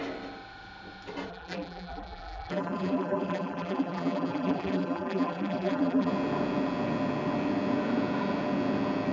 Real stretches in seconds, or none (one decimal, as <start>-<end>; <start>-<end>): 0.0-1.3; 6.1-9.1

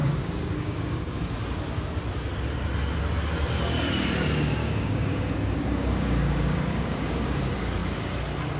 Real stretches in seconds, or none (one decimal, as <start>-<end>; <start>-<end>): 1.2-4.6; 7.2-8.6